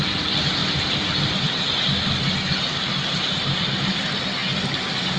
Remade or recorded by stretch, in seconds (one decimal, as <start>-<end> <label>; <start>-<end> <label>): 0.0-5.2 recorded